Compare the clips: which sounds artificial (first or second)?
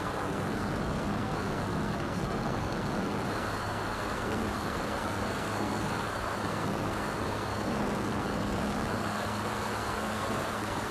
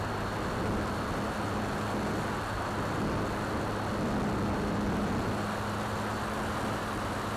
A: first